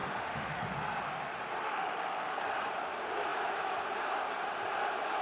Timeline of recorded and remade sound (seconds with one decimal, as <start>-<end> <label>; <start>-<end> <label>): 0.0-0.6 remade; 0.6-1.6 recorded; 1.6-2.4 remade; 2.4-5.2 recorded